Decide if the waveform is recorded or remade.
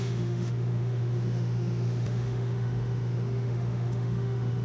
remade